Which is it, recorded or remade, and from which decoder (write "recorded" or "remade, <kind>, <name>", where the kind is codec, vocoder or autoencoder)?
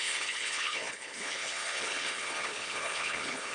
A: remade, codec, HILCodec